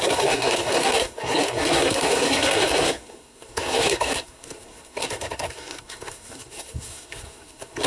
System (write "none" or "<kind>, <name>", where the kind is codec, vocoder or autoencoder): codec, SNAC